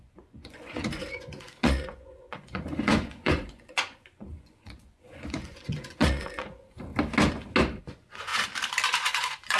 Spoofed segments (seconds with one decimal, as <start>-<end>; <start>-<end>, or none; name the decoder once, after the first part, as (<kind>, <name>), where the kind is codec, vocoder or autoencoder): 0.0-6.9 (vocoder, Vocos); 7.8-8.3; 9.0-9.6